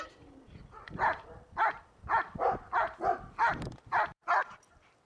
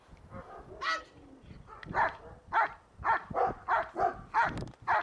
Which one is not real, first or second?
first